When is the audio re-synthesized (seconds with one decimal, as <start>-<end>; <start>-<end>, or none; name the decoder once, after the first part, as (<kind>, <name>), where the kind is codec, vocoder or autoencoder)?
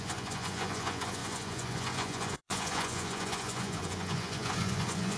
0.0-5.2 (vocoder, Vocos)